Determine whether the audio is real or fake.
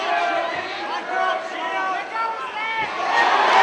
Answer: fake